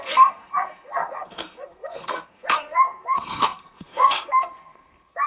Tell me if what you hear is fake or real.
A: fake